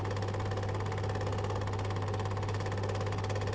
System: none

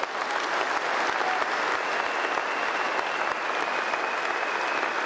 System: none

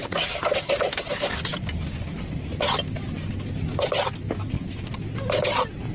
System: none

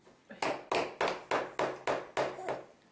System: none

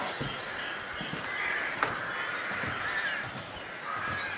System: none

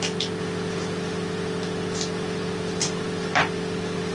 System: none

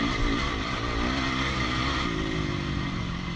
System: none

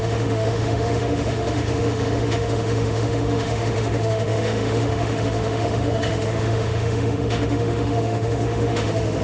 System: autoencoder, DAC-VAE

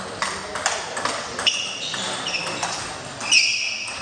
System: none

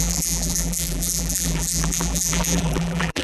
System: vocoder, BigVGAN v2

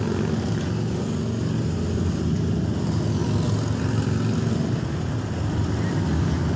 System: none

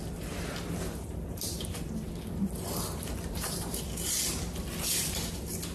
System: vocoder, BigVGAN v2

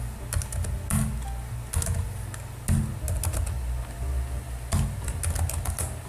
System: none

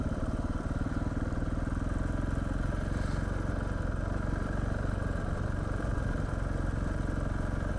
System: vocoder, BigVGAN v2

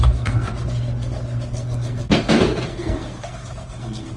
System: codec, SNAC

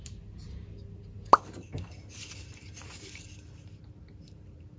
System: none